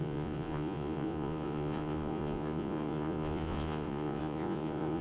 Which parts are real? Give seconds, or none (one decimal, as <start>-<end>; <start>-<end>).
none